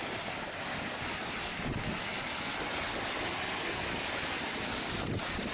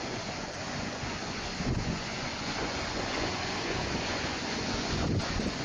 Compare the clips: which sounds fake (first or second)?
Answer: second